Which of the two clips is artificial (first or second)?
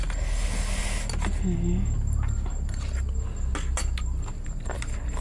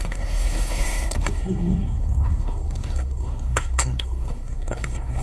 second